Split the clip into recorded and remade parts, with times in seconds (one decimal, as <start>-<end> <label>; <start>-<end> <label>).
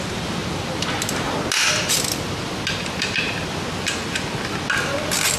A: 0.0-5.4 recorded